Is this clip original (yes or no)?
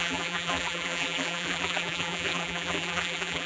no